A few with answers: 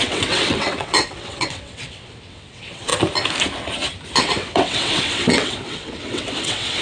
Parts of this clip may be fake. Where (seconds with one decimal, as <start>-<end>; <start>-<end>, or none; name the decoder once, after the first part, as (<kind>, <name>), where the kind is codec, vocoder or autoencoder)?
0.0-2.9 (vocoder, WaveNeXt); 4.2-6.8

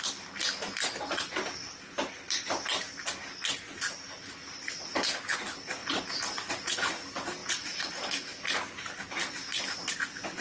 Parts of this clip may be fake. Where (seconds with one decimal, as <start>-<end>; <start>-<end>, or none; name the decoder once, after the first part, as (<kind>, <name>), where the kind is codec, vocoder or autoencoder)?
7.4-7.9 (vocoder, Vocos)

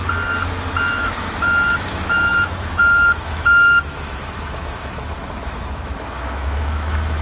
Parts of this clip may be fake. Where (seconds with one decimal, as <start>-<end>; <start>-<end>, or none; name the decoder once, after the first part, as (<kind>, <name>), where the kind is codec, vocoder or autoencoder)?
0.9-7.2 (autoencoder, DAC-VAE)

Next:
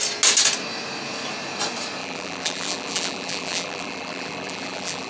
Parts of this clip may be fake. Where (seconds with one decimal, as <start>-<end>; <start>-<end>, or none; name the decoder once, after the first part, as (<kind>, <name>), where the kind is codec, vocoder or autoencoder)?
2.0-5.1 (vocoder, BigVGAN v2)